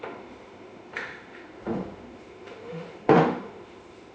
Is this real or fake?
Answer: fake